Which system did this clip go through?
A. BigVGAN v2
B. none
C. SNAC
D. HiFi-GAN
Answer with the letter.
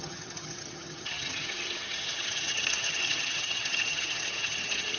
D